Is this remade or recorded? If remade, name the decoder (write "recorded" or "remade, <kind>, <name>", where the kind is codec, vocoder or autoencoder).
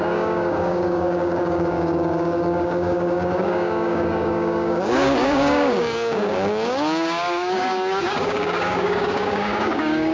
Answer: remade, codec, DAC